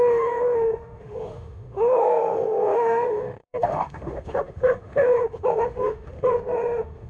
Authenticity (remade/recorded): remade